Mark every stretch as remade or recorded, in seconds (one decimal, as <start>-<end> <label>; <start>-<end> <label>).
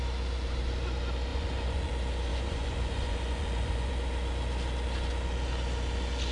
0.0-1.3 recorded; 1.3-1.9 remade; 1.9-2.3 recorded; 2.3-3.9 remade; 3.9-6.3 recorded